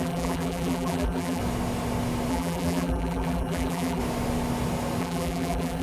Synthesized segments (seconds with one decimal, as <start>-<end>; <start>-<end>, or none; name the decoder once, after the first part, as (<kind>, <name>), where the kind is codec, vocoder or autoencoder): 0.0-1.4 (vocoder, BigVGAN v2); 2.3-4.0; 5.0-5.8